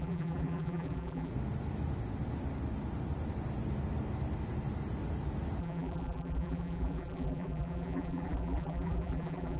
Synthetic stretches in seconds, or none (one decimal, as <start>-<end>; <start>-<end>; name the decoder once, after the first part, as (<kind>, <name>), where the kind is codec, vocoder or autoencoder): 0.0-1.3 (vocoder, BigVGAN v2); 5.6-9.6